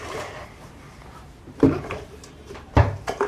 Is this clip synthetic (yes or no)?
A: yes